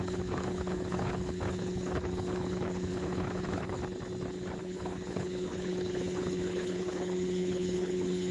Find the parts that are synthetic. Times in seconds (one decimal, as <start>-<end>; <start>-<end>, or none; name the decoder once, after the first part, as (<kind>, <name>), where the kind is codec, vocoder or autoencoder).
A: 0.0-3.8 (codec, HILCodec); 4.6-8.3